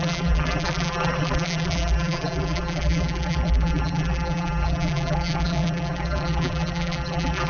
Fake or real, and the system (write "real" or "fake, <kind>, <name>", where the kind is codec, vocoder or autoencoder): fake, vocoder, BigVGAN v2